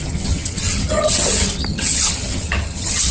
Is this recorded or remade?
remade